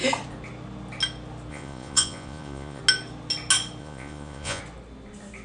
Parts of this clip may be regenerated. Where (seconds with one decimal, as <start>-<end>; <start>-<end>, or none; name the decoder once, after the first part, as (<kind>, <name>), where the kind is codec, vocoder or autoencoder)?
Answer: 1.5-2.8 (vocoder, Vocos); 3.8-4.6